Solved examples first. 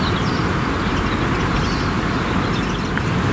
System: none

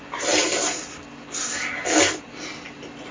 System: none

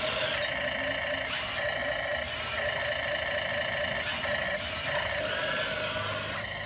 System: none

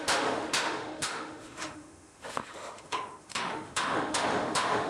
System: autoencoder, DAC-VAE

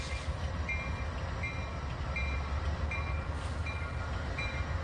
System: none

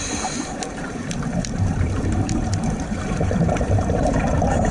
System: vocoder, BigVGAN v2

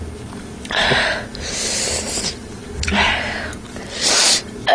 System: none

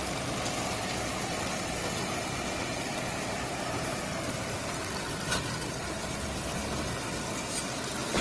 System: none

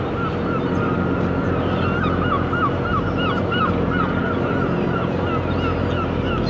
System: none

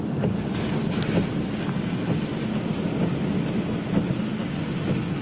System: none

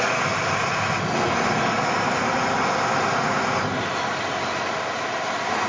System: none